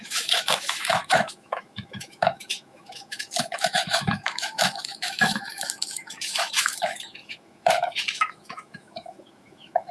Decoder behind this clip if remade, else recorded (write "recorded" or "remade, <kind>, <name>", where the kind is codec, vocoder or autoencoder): remade, autoencoder, DAC-VAE